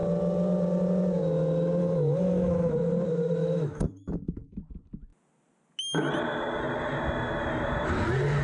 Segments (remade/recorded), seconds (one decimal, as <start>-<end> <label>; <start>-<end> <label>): 0.0-1.8 recorded; 1.8-2.7 remade; 2.7-3.4 recorded; 3.4-4.6 remade; 4.6-8.4 recorded